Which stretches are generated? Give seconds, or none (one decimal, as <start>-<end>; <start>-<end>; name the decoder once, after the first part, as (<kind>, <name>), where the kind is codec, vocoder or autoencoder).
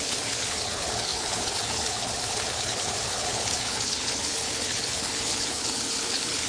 0.0-6.5 (codec, HILCodec)